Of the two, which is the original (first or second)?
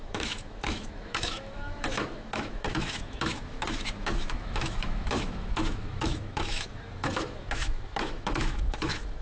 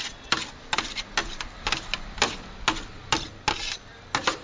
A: second